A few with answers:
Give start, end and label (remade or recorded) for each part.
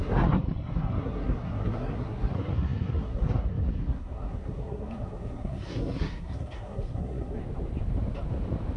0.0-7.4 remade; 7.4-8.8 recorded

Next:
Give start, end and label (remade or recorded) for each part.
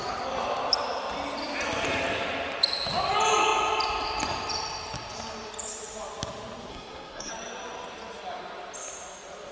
0.0-6.7 recorded; 6.7-7.3 remade; 7.3-9.5 recorded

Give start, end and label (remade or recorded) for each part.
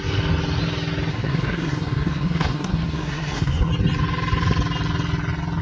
0.0-1.1 recorded; 1.1-3.7 remade; 3.7-5.6 recorded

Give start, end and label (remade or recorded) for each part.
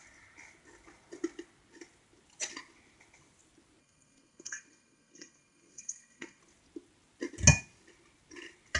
0.0-3.8 recorded; 3.8-6.4 remade; 6.4-8.8 recorded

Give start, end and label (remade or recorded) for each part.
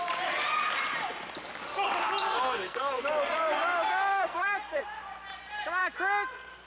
0.0-2.3 recorded; 2.3-3.0 remade; 3.0-4.1 recorded; 4.1-4.8 remade; 4.8-6.7 recorded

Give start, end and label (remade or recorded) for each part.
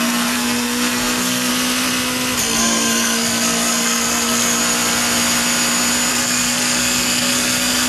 0.0-1.5 remade; 1.5-2.4 recorded; 2.4-4.6 remade; 4.6-6.1 recorded; 6.1-7.9 remade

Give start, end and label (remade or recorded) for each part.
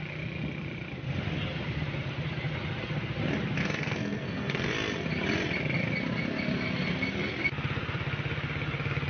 0.0-3.6 recorded; 3.6-4.7 remade; 4.7-9.1 recorded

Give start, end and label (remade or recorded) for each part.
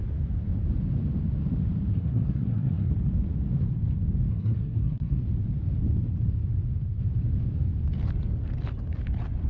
0.0-1.9 recorded; 1.9-2.9 remade; 2.9-4.3 recorded; 4.3-5.2 remade; 5.2-9.5 recorded